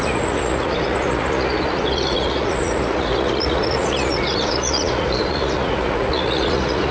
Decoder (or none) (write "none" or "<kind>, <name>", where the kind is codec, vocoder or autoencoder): vocoder, Vocos